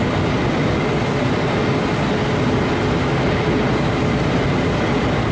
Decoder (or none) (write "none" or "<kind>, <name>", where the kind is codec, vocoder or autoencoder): none